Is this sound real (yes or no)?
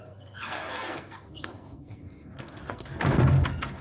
no